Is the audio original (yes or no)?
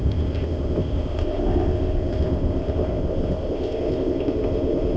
no